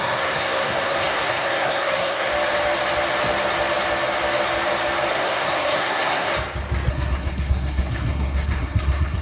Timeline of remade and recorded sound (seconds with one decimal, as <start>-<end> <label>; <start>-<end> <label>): 0.0-2.3 remade; 2.3-5.1 recorded; 5.1-6.3 remade; 6.3-6.9 recorded; 6.9-9.2 remade